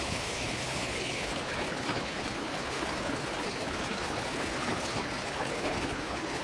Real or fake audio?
fake